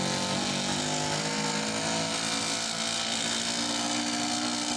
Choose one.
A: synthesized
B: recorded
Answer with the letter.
B